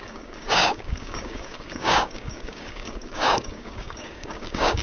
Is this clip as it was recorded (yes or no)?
no